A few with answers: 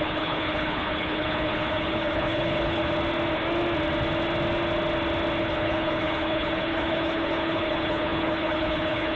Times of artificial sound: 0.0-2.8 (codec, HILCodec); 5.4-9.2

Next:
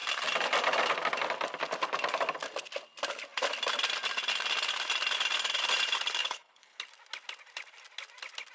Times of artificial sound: 6.2-6.8 (codec, HILCodec)